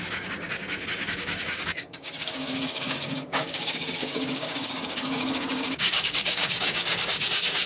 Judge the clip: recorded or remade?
remade